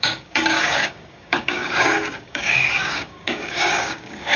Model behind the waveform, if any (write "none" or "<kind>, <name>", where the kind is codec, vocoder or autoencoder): codec, DAC